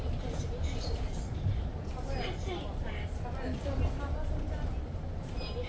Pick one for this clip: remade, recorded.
recorded